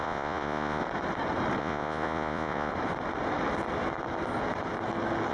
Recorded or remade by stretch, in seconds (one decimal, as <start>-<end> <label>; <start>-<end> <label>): 0.0-0.8 remade; 0.8-1.6 recorded; 1.6-2.7 remade; 2.7-5.3 recorded